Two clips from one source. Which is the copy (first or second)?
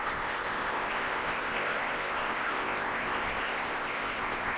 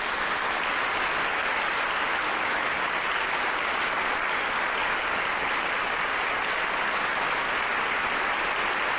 first